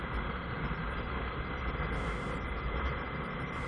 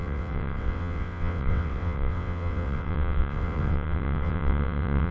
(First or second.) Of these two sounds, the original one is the first